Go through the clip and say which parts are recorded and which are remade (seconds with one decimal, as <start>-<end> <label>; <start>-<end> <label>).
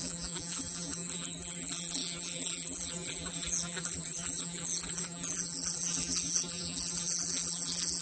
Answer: 0.0-8.0 remade